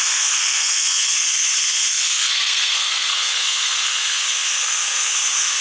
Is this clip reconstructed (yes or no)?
yes